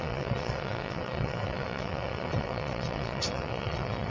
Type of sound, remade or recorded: remade